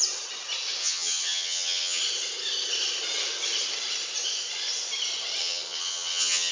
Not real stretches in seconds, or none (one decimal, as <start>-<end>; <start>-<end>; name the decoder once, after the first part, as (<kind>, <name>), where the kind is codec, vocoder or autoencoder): 0.8-2.0 (vocoder, HiFi-GAN); 5.4-6.5